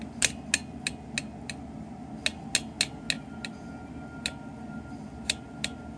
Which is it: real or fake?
real